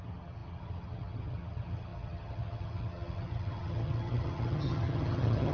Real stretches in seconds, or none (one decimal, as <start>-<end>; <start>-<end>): none